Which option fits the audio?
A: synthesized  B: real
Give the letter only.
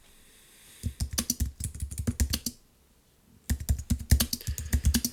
B